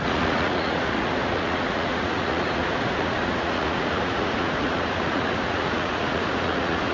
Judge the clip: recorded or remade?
remade